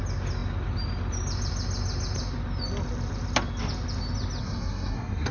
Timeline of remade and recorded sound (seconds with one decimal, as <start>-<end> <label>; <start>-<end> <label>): 0.0-4.4 recorded; 4.4-5.3 remade